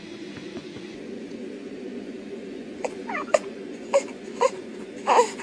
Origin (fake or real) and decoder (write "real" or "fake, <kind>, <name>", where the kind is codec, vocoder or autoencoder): fake, vocoder, Vocos